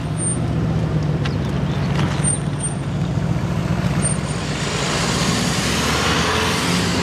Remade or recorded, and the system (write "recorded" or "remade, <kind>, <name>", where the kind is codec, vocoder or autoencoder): recorded